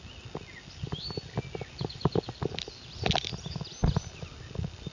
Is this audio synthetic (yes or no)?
no